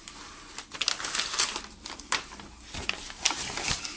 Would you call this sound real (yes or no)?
yes